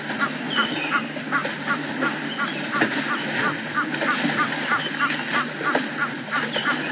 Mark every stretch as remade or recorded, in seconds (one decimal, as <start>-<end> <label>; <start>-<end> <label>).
0.0-6.9 recorded